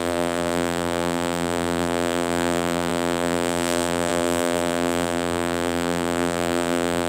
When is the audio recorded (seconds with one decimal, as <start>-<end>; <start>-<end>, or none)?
none